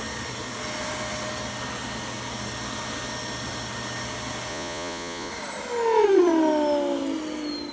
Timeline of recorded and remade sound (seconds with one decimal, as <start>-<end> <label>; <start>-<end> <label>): 0.0-4.5 recorded; 4.5-5.3 remade; 5.3-7.7 recorded